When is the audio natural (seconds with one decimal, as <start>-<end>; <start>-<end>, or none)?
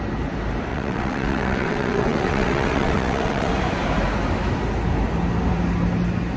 0.0-0.7; 3.5-6.4